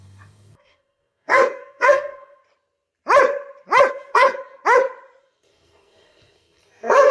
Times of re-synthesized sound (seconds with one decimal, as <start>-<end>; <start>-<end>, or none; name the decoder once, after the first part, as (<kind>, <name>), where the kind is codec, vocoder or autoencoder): 0.0-2.4 (codec, SNAC); 3.9-4.6; 5.2-7.1